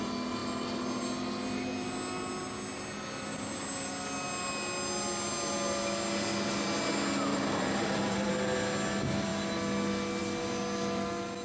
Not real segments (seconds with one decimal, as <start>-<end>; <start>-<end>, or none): 3.3-3.9; 7.3-8.3

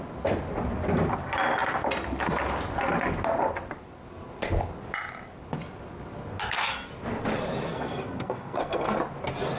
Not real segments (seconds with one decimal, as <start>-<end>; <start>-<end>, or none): 6.4-6.9; 7.7-9.0

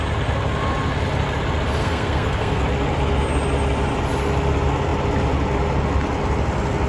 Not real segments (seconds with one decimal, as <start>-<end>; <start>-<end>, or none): 1.8-2.6